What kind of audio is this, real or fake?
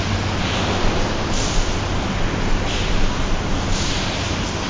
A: real